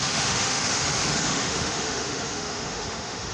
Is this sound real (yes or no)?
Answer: no